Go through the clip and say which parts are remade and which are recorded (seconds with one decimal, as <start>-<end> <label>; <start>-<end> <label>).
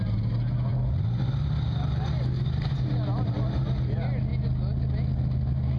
0.0-5.8 recorded